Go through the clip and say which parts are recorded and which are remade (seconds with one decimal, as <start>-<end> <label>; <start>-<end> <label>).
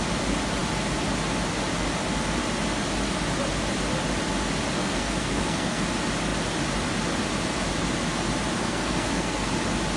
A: 0.0-4.8 recorded; 4.8-5.8 remade; 5.8-8.6 recorded; 8.6-9.5 remade; 9.5-10.0 recorded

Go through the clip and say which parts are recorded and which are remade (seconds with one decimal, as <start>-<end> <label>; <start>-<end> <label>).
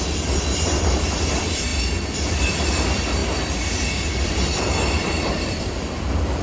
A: 0.0-1.7 remade; 1.7-2.3 recorded; 2.3-6.4 remade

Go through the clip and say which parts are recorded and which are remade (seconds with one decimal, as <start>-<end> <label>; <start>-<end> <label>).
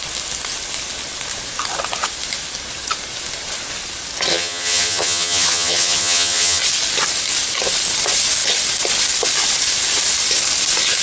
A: 0.0-4.3 recorded; 4.3-6.6 remade; 6.6-11.0 recorded